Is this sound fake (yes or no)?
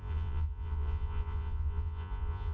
yes